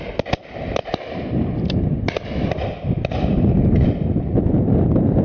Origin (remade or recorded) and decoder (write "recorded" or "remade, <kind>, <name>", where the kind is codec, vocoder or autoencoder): recorded